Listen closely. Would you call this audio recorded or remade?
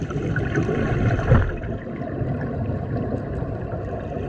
remade